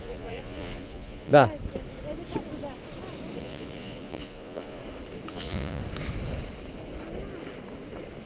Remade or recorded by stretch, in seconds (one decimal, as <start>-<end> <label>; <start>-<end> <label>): 0.0-1.3 remade; 1.3-3.4 recorded; 3.4-4.8 remade; 4.8-5.3 recorded; 5.3-5.8 remade; 5.8-8.3 recorded